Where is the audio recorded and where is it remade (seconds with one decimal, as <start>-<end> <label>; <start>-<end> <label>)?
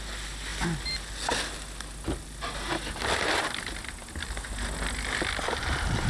0.0-6.1 recorded